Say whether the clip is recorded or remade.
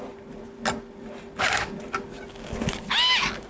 recorded